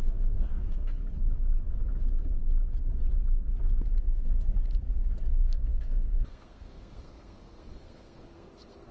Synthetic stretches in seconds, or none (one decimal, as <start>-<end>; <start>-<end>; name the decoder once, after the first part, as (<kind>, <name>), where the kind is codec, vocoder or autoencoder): 0.0-1.0 (codec, SNAC); 5.3-8.9